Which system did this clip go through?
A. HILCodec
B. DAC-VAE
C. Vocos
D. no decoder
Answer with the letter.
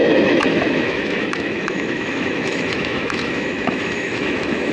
B